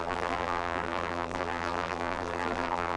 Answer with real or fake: fake